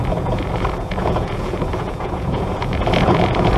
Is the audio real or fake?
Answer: fake